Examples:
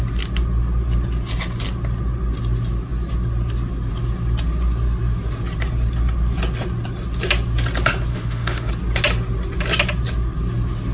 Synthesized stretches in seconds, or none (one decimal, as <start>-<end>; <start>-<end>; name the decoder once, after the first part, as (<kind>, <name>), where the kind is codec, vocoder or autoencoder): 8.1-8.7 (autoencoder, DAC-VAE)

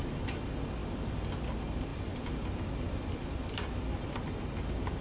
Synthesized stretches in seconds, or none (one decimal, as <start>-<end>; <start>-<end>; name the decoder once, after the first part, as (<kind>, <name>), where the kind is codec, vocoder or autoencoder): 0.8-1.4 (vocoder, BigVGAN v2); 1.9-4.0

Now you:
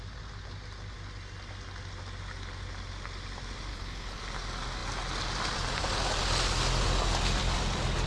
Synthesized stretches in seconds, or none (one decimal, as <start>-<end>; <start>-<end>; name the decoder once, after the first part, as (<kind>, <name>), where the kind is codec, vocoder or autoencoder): 3.7-4.2 (codec, HILCodec)

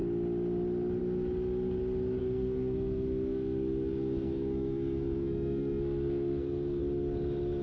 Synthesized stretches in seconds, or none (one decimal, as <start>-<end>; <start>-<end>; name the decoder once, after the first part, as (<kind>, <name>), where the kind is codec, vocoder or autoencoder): 2.2-6.8 (codec, SNAC)

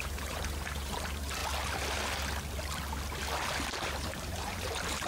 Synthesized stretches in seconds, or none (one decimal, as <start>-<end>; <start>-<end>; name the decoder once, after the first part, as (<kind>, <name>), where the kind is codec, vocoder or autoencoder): 0.0-1.4 (vocoder, BigVGAN v2); 3.7-5.1

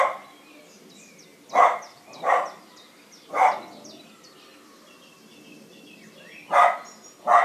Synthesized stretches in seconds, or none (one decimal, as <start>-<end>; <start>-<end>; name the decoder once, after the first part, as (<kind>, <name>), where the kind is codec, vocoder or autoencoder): 1.3-3.3 (vocoder, BigVGAN v2)